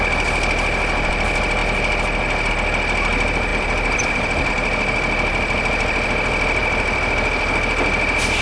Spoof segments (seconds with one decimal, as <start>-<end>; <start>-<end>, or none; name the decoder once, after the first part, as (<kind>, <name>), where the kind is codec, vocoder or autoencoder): 3.5-4.5 (vocoder, BigVGAN v2); 5.3-6.1; 6.6-7.5